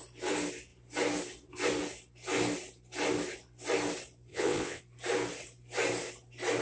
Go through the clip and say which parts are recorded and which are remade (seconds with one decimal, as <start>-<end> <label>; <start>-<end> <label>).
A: 0.0-4.3 recorded; 4.3-4.8 remade; 4.8-6.6 recorded